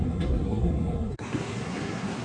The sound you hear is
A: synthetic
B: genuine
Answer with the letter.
A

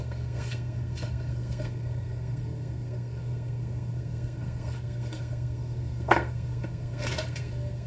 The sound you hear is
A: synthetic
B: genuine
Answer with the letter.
A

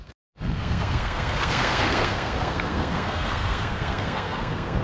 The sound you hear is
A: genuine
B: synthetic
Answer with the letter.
B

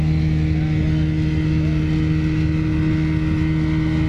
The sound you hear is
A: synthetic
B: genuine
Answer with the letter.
B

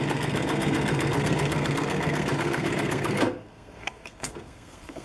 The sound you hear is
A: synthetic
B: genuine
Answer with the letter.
A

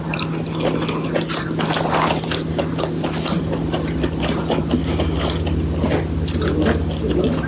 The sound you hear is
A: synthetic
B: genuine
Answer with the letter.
B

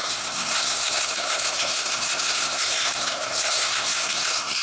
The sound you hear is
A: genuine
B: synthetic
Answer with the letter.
B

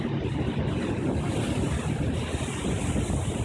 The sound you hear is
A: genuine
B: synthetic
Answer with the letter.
A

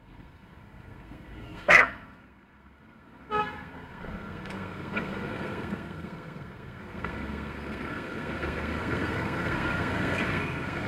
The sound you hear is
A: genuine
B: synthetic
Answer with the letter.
B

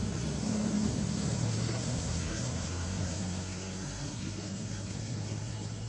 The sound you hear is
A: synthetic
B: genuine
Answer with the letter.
A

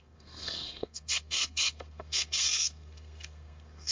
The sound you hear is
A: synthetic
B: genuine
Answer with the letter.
A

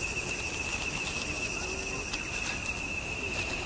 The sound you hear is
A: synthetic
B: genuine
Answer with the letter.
B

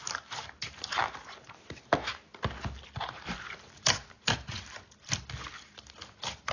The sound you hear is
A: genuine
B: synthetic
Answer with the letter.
A